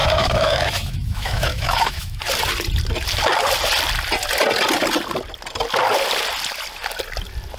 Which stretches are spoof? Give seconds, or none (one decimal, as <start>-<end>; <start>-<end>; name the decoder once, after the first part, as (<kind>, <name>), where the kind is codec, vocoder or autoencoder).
0.0-2.2 (autoencoder, DAC-VAE)